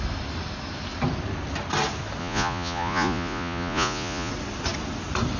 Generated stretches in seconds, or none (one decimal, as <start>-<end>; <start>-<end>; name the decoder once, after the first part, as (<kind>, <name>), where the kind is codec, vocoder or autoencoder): 2.2-4.3 (vocoder, Vocos)